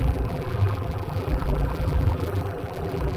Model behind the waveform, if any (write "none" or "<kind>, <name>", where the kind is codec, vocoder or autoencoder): vocoder, BigVGAN v2